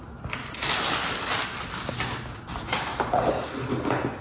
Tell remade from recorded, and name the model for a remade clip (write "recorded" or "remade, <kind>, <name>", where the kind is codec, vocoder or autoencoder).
recorded